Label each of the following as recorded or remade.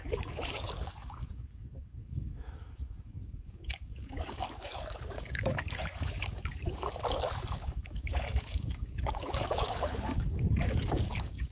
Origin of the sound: remade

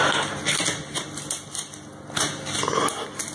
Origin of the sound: recorded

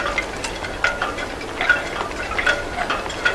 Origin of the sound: recorded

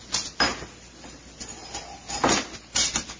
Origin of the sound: recorded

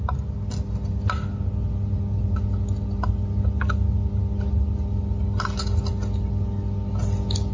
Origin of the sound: recorded